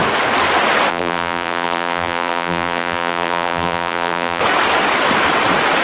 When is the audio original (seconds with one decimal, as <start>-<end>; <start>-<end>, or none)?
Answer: 0.0-0.9; 4.4-5.8